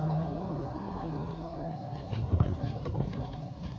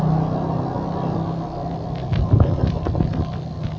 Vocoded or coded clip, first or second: first